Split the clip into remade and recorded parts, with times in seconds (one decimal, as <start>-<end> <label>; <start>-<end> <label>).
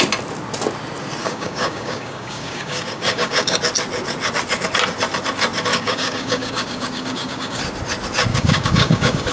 0.0-1.2 recorded; 1.2-3.6 remade; 3.6-5.7 recorded; 5.7-7.6 remade; 7.6-8.3 recorded; 8.3-9.3 remade